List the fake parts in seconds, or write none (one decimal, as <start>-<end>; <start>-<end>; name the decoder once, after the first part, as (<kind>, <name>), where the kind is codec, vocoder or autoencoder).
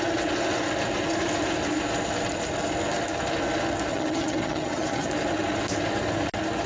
3.9-5.1 (vocoder, HiFi-GAN)